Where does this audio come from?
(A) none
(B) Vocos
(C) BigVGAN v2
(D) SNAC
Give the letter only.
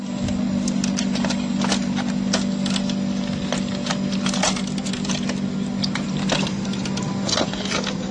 A